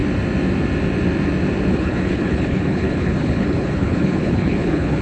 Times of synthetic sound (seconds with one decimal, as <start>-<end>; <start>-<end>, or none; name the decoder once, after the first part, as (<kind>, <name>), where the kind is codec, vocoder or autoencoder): 1.7-5.0 (codec, HILCodec)